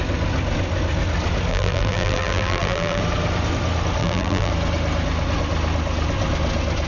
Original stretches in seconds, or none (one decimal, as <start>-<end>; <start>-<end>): 0.0-1.5; 3.0-4.0; 4.5-6.9